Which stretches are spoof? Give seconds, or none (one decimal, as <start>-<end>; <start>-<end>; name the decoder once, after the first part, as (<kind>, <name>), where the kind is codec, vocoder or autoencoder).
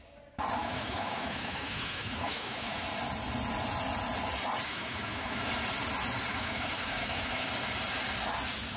0.6-2.8 (autoencoder, DAC-VAE); 4.7-5.4; 6.3-7.5